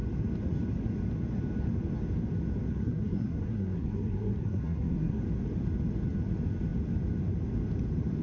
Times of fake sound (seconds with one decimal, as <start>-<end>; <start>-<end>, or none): 2.7-5.2